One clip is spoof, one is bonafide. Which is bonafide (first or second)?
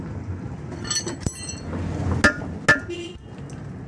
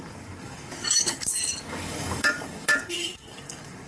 first